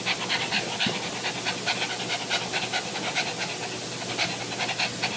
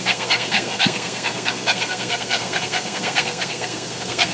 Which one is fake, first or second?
second